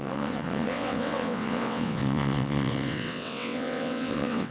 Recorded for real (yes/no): no